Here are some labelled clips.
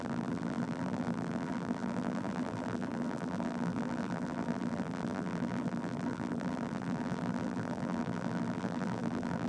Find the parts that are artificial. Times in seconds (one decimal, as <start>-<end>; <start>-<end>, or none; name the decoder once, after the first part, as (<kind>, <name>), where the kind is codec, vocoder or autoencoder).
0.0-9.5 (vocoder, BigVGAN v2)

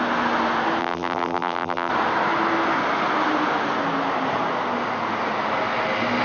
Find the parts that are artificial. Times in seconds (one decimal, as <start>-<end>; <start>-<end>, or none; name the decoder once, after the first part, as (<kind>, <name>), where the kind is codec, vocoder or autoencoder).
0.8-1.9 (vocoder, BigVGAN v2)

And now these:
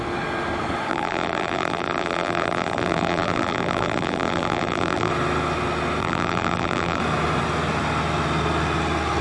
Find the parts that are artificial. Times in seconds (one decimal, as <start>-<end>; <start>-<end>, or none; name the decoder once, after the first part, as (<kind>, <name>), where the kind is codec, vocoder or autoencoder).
0.9-5.1 (vocoder, BigVGAN v2); 6.0-7.0

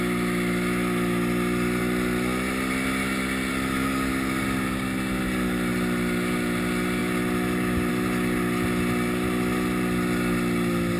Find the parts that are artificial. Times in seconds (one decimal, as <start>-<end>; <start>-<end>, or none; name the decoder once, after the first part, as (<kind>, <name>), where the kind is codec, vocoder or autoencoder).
none

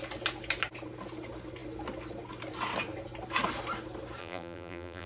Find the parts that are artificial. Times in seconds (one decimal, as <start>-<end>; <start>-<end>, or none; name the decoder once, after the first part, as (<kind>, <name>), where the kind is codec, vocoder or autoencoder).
4.2-5.1 (vocoder, BigVGAN v2)

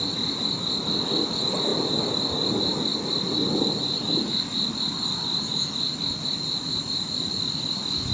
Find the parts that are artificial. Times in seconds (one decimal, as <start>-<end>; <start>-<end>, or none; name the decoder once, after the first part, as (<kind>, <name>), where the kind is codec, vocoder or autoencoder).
5.9-7.3 (vocoder, BigVGAN v2)

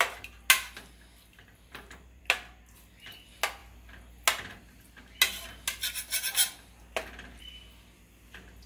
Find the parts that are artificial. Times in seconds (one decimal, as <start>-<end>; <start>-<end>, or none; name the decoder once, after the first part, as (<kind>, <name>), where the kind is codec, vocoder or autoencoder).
1.3-2.2 (vocoder, BigVGAN v2)

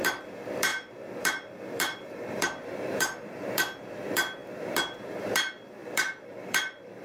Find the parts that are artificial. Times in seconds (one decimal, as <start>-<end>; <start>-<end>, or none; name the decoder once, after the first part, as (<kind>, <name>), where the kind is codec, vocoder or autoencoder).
0.0-7.0 (vocoder, BigVGAN v2)